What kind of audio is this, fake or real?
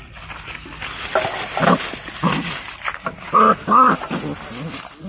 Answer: real